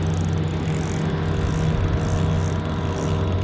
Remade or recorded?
recorded